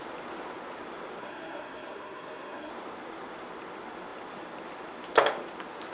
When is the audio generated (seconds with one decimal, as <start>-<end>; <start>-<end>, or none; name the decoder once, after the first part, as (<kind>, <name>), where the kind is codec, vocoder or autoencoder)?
1.2-2.7 (codec, SNAC)